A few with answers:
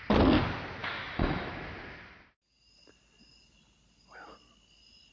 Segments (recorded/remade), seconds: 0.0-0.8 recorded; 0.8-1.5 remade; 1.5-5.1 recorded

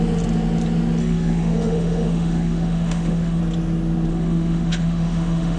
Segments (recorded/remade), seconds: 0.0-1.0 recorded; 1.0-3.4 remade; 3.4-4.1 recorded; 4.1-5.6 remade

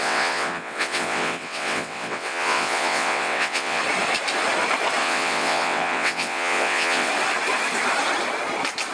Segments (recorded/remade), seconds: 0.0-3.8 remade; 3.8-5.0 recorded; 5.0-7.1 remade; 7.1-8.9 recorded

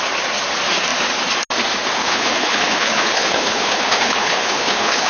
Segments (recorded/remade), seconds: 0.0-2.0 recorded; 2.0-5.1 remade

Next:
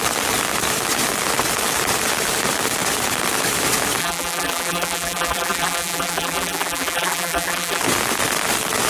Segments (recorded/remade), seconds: 0.0-4.0 recorded; 4.0-7.8 remade; 7.8-8.9 recorded